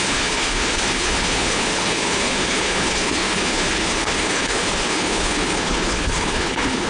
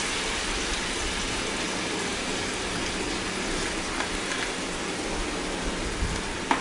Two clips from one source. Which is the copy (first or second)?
first